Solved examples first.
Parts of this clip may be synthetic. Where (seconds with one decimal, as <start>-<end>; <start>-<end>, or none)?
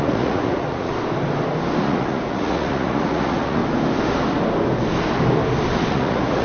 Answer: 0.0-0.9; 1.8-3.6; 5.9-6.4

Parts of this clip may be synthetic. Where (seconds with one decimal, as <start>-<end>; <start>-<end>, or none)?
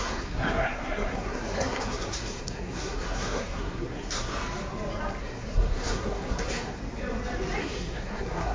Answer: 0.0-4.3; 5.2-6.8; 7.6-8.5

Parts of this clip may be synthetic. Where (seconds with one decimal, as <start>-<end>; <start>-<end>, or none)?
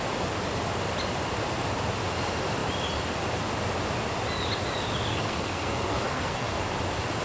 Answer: 5.1-6.6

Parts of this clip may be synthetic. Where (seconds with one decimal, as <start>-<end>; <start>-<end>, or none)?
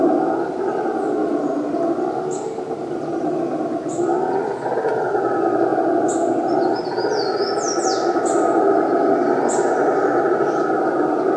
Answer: 0.0-5.7; 6.8-11.4